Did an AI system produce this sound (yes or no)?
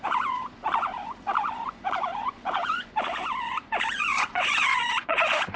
yes